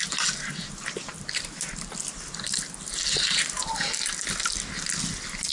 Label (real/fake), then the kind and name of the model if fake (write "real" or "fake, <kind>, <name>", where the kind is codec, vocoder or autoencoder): real